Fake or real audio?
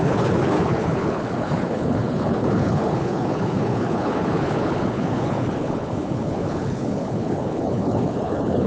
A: fake